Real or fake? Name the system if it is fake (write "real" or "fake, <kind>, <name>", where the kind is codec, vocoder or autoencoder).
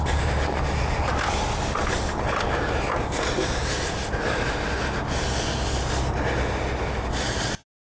real